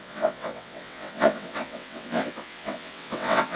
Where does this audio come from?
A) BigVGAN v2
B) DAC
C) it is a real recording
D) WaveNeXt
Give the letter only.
D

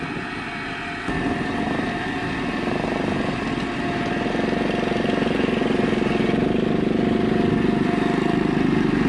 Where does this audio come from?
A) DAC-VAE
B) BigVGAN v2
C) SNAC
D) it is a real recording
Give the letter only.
D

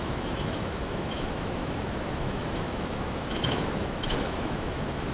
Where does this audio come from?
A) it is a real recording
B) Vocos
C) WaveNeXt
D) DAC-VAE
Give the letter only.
D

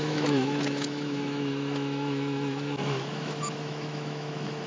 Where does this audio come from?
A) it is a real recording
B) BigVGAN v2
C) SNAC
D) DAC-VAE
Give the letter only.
D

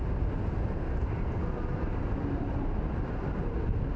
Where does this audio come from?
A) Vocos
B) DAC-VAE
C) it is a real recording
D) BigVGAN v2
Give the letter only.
C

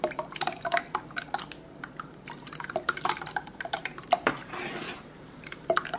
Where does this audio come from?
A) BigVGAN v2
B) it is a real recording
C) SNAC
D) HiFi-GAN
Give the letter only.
A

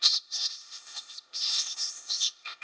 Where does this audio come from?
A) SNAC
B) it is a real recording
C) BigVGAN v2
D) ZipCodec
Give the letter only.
D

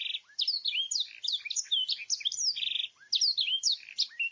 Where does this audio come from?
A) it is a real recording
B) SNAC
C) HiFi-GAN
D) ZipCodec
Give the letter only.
A